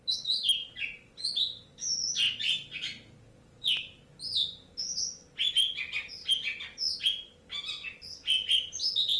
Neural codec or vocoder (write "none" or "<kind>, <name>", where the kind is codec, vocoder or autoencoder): none